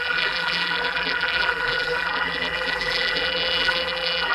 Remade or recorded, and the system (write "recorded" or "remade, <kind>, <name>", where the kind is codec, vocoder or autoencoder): remade, vocoder, BigVGAN v2